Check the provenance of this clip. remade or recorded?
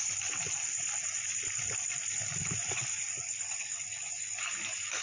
recorded